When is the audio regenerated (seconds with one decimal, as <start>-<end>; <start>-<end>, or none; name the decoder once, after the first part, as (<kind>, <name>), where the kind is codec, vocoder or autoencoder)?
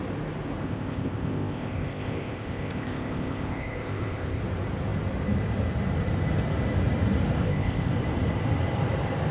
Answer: 0.6-4.4 (codec, ZipCodec); 7.4-7.9